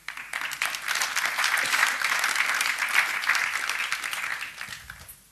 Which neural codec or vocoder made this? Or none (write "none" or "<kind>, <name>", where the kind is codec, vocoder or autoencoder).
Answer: none